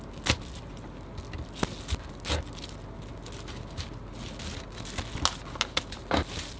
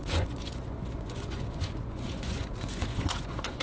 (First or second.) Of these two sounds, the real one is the first